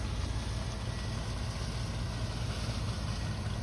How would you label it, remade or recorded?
recorded